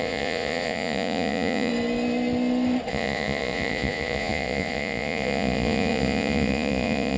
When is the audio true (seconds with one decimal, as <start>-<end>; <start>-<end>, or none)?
1.7-2.9